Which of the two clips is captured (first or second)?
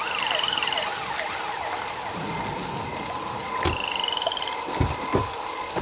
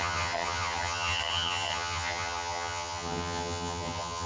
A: first